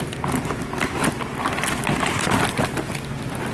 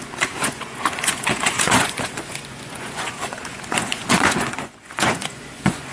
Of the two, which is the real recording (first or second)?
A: first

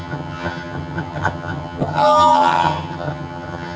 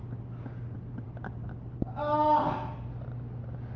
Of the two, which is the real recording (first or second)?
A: second